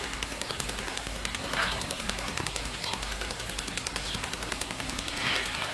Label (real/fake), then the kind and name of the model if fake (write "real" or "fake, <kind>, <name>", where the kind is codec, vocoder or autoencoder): fake, codec, SNAC